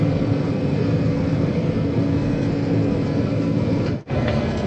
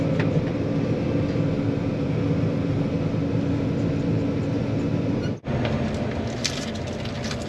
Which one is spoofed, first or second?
first